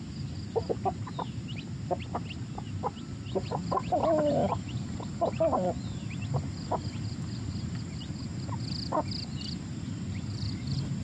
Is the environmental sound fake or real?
real